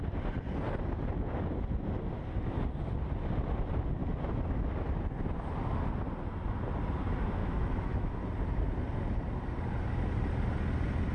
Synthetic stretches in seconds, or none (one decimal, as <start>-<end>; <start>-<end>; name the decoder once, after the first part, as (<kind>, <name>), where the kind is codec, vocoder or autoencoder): 7.4-8.1 (autoencoder, DAC-VAE)